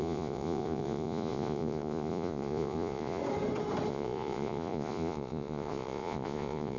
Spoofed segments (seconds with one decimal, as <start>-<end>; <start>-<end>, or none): 0.0-3.2; 3.9-6.8

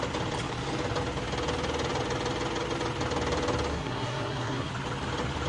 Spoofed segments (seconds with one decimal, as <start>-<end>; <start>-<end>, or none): 3.7-4.7

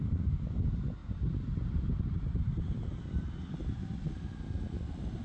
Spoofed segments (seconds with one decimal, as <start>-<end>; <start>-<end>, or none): none

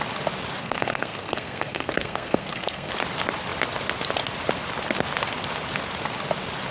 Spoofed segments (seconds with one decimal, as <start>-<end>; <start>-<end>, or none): 0.6-2.9

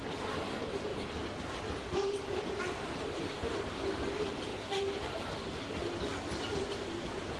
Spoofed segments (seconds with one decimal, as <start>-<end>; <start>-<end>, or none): none

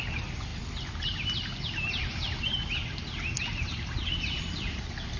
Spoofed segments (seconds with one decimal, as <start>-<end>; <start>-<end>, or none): none